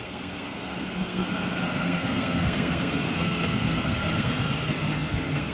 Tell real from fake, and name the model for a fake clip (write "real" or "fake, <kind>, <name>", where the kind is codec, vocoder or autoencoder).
fake, codec, SNAC